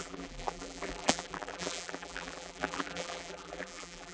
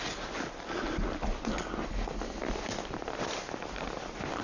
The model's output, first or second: first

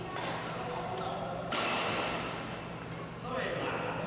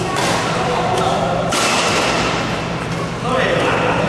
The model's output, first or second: second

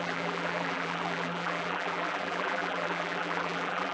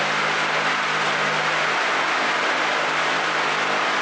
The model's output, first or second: first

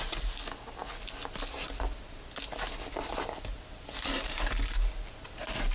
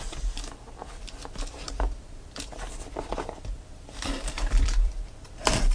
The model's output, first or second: second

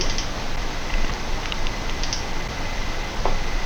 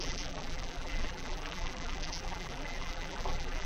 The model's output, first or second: second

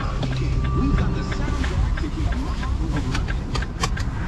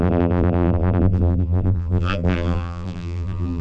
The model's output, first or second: second